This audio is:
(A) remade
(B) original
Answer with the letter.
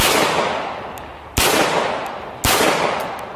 B